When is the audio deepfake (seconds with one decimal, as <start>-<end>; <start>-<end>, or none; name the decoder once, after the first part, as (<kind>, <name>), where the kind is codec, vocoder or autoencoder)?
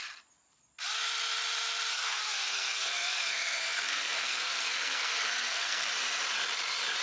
1.9-5.9 (codec, SNAC)